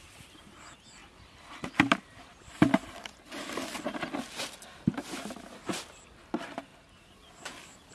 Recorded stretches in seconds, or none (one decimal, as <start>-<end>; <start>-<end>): 0.0-7.9

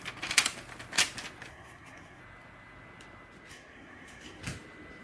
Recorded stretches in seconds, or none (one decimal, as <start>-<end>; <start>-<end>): 0.0-1.5; 2.2-3.5; 4.4-5.0

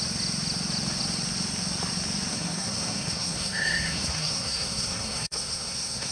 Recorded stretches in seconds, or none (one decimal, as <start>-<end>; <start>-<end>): 0.0-2.3